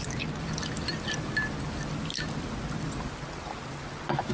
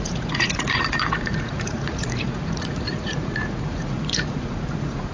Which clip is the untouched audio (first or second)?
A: first